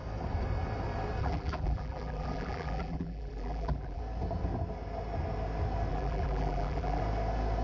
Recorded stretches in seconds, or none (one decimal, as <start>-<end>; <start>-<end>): 0.0-1.2; 4.0-5.9; 7.0-7.6